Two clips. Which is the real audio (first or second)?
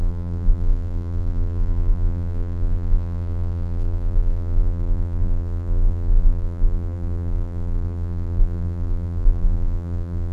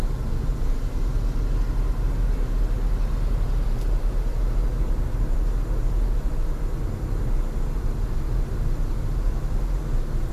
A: second